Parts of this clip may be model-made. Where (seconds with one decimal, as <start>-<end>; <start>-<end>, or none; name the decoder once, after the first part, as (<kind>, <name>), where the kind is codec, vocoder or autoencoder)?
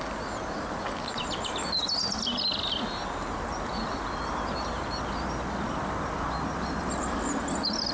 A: none